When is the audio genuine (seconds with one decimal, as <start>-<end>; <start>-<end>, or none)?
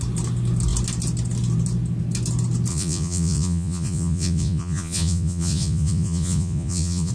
0.0-2.7